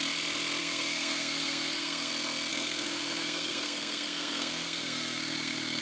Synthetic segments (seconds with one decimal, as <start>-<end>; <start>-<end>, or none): 0.6-2.1; 2.5-5.8